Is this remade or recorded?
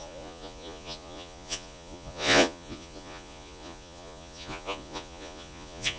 remade